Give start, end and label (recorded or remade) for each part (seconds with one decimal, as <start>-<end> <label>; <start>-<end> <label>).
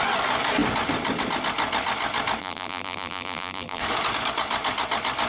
0.0-2.4 recorded; 2.4-3.8 remade; 3.8-5.3 recorded